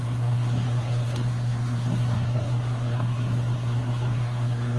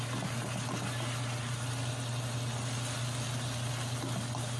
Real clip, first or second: second